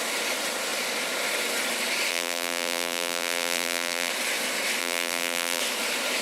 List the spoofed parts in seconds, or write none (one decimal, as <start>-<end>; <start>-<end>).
2.1-4.1; 4.8-5.6